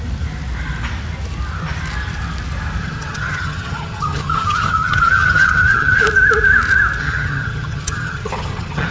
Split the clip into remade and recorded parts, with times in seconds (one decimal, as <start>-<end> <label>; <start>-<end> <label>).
0.0-2.8 recorded; 2.8-6.0 remade; 6.0-7.0 recorded; 7.0-8.9 remade